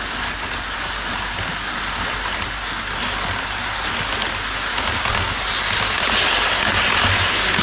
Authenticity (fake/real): real